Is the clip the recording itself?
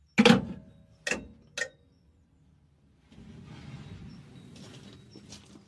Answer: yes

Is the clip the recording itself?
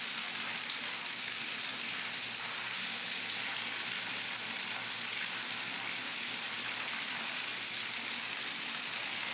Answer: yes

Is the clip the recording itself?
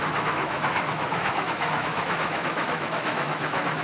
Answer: no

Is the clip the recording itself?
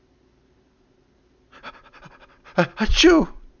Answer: yes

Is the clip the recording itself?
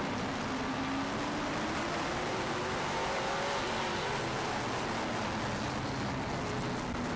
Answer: yes